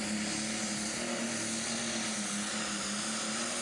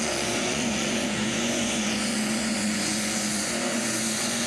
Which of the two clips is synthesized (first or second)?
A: second